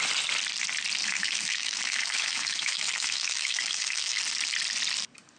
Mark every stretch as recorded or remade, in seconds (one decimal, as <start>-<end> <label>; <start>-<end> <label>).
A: 0.0-1.0 recorded; 1.0-4.2 remade; 4.2-5.4 recorded